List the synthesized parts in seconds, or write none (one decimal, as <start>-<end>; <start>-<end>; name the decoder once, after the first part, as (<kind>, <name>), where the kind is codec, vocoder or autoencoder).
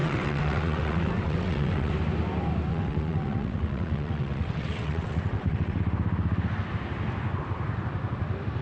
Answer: 0.0-1.9 (vocoder, WaveNeXt); 2.7-5.8